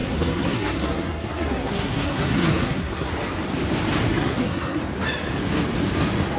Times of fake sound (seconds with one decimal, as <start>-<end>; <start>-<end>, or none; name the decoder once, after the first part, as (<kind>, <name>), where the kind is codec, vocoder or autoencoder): 0.0-3.1 (codec, SNAC); 4.1-4.8